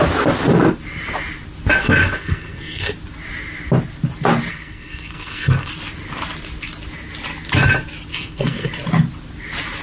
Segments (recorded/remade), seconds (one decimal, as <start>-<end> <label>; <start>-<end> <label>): 0.0-1.8 recorded; 1.8-2.9 remade; 2.9-4.5 recorded; 4.5-5.7 remade; 5.7-8.1 recorded; 8.1-8.7 remade; 8.7-9.8 recorded